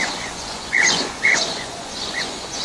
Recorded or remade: remade